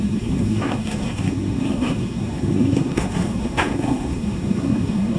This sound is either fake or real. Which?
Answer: fake